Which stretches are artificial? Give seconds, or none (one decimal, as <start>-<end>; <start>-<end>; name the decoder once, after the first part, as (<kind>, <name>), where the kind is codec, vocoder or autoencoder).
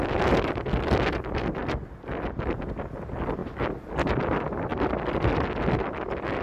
none